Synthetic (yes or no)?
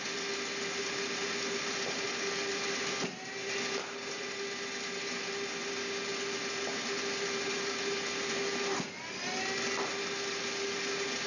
no